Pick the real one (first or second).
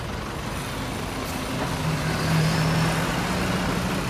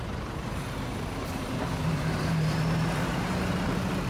first